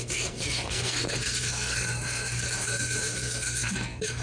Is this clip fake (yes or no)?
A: yes